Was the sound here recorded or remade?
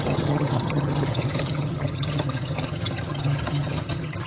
remade